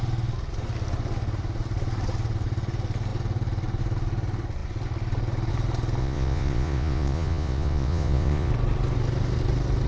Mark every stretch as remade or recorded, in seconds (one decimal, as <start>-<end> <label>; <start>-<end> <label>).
0.0-6.0 recorded; 6.0-8.5 remade; 8.5-9.9 recorded